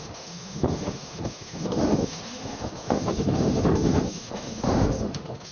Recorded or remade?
remade